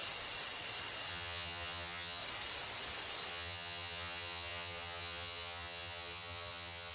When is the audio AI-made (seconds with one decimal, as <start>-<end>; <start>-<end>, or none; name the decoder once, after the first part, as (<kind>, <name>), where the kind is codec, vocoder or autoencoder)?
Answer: 1.1-2.2 (vocoder, HiFi-GAN); 3.3-6.9